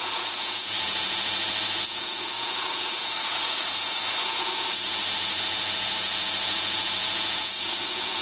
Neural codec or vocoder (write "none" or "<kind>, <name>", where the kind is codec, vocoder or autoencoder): vocoder, Vocos